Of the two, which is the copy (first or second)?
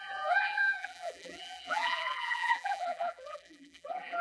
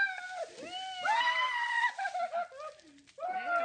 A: first